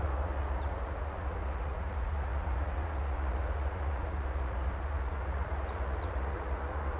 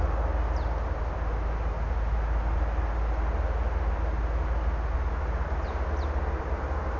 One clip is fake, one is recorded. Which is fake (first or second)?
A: first